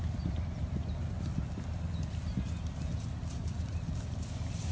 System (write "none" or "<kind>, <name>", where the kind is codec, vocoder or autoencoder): none